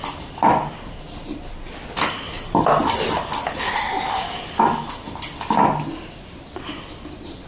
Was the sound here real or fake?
real